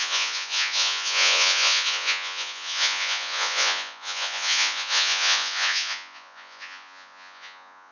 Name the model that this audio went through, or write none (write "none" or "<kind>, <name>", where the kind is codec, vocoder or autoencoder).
vocoder, Vocos